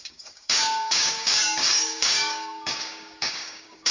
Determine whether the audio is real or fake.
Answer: fake